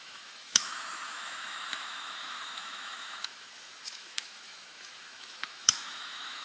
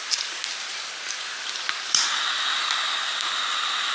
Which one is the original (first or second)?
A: second